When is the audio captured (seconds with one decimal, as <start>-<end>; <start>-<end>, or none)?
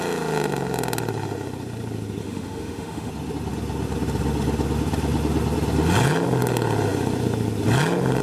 0.0-2.2; 3.1-8.2